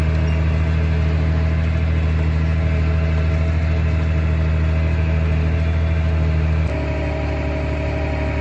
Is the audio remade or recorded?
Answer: recorded